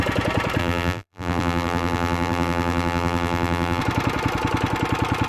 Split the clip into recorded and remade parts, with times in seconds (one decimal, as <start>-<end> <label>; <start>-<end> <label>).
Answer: 0.0-0.6 recorded; 0.6-3.8 remade; 3.8-5.3 recorded